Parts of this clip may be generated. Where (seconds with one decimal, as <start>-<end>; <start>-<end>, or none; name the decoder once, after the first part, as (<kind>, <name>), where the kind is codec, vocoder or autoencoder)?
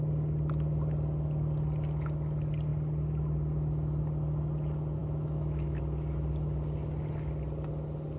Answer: 5.0-5.8 (autoencoder, DAC-VAE)